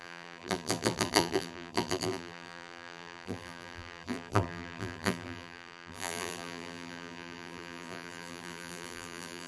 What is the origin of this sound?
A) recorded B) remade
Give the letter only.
B